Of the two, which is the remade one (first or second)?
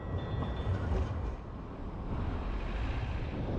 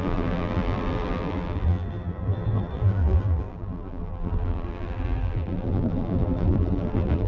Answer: second